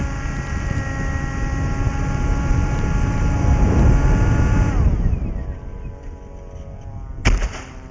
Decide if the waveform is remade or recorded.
recorded